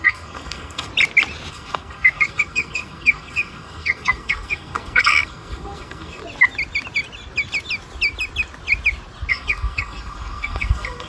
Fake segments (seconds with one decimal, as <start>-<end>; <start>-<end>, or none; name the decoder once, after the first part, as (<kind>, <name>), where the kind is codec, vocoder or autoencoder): 0.0-0.9 (codec, SNAC); 1.5-6.2; 9.3-11.1